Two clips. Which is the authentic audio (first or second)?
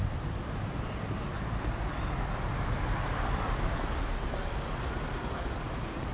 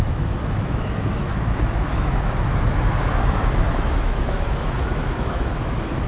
first